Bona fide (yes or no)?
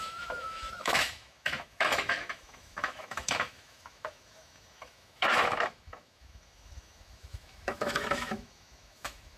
no